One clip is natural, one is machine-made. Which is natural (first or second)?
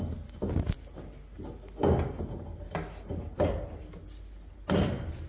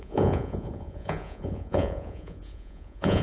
first